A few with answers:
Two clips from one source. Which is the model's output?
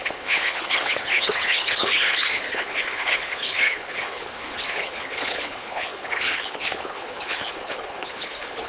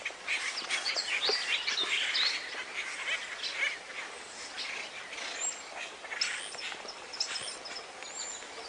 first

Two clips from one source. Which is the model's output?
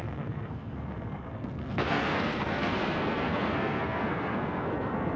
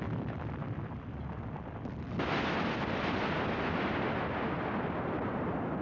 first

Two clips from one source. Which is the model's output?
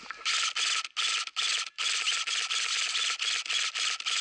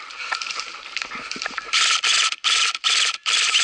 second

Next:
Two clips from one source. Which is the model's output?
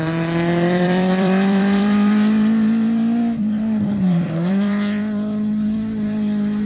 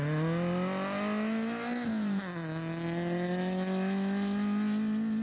first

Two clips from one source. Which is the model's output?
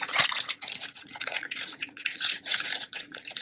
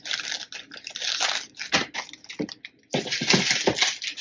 first